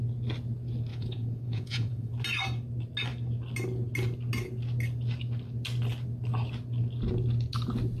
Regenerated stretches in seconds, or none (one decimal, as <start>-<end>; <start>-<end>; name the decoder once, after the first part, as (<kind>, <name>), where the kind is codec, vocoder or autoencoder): 0.9-2.1 (vocoder, Vocos)